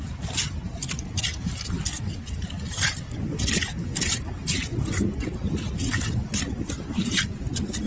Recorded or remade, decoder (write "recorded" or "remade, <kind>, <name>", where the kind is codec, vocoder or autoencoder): recorded